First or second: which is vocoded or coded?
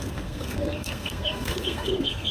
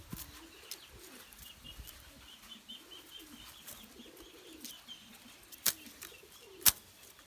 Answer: first